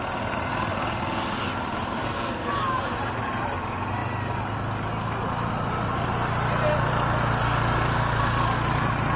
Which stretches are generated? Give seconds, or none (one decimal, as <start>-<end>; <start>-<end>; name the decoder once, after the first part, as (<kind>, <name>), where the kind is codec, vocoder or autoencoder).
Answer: 2.0-2.5 (codec, SNAC)